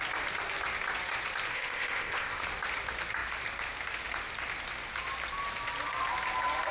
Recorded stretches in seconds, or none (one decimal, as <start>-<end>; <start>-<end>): 0.0-1.5; 2.4-6.7